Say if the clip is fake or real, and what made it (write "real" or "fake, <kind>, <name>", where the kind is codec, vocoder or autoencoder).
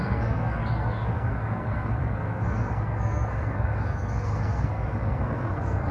fake, codec, SNAC